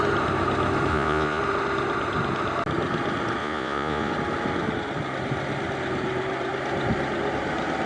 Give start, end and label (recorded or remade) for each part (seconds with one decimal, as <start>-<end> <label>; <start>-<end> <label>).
0.0-0.9 recorded; 0.9-1.4 remade; 1.4-3.4 recorded; 3.4-4.1 remade; 4.1-7.9 recorded